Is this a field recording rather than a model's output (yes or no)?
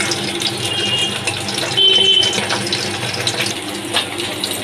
yes